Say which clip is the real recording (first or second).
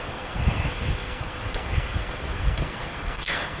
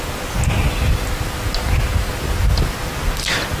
second